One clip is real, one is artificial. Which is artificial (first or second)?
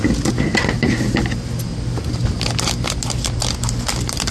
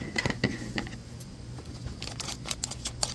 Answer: second